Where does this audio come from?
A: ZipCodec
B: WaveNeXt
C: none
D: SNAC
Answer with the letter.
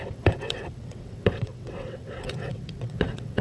B